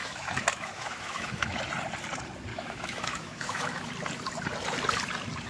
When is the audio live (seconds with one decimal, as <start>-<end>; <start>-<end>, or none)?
1.6-2.5; 3.9-5.5